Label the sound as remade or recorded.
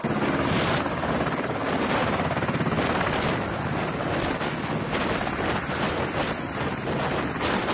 recorded